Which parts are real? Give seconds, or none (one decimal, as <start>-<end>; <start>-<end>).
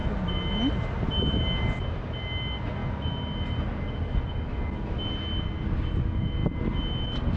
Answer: 0.0-7.4